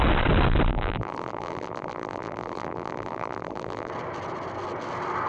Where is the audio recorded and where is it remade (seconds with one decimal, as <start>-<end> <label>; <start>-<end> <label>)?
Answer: 0.0-0.7 recorded; 0.7-3.9 remade; 3.9-5.3 recorded